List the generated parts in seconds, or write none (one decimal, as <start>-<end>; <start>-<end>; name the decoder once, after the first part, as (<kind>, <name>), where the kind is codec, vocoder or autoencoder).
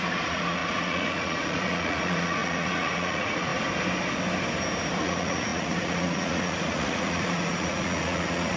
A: 0.0-3.5 (vocoder, Vocos); 5.0-8.6